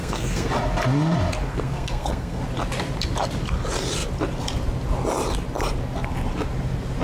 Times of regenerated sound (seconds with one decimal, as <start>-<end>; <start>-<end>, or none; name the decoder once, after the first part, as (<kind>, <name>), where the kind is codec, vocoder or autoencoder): 0.0-0.5 (codec, SNAC); 1.5-2.4